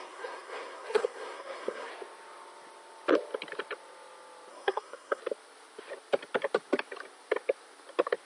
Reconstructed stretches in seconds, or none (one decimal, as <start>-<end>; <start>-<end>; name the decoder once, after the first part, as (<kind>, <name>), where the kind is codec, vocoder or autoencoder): 0.0-1.9 (codec, SNAC); 4.5-5.2